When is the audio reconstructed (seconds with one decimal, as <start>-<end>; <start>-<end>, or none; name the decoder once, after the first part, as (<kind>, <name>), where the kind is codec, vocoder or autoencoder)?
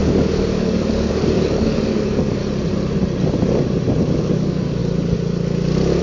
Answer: 0.0-2.4 (codec, DAC); 4.2-4.8